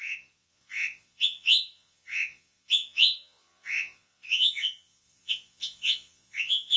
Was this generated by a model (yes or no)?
yes